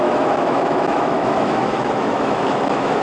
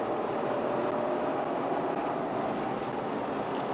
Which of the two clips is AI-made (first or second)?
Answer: first